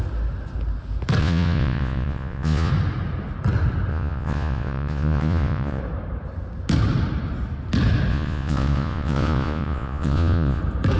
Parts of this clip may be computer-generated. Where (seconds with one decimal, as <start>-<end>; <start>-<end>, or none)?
1.2-2.7; 3.9-5.8; 8.1-10.6